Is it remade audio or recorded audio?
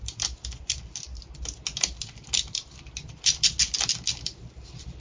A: recorded